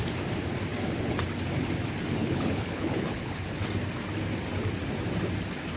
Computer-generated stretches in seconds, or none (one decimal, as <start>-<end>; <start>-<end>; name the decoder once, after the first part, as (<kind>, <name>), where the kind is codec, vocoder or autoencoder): 2.2-3.7 (codec, HILCodec)